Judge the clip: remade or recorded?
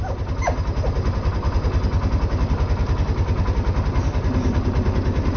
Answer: recorded